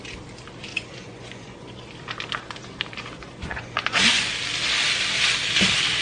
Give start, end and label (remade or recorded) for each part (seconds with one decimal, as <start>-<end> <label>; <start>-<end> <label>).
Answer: 0.0-0.7 recorded; 0.7-1.8 remade; 1.8-2.6 recorded; 2.6-4.3 remade; 4.3-6.0 recorded